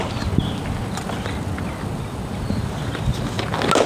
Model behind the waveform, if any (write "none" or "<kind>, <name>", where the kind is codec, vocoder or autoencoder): none